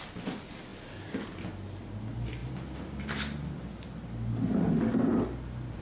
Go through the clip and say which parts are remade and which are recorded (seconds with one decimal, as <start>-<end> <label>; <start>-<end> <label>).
0.0-5.8 recorded